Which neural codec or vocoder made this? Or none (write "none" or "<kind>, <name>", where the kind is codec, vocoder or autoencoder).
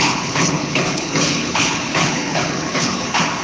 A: codec, HILCodec